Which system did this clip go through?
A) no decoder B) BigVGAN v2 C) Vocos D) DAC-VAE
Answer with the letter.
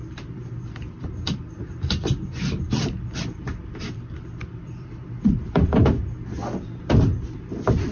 B